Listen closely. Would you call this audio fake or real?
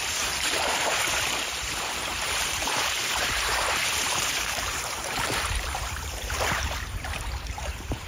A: fake